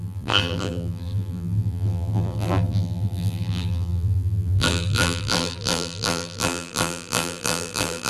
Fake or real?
fake